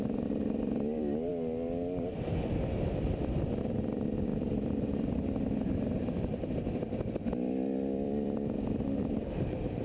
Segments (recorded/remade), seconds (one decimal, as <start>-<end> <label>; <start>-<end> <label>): 0.0-1.3 remade; 1.3-3.7 recorded; 3.7-9.8 remade